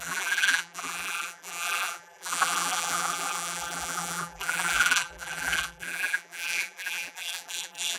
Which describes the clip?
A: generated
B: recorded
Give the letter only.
A